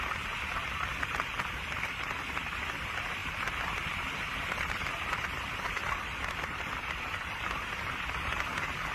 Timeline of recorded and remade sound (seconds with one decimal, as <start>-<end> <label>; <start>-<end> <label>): 0.0-5.8 recorded; 5.8-8.0 remade; 8.0-8.9 recorded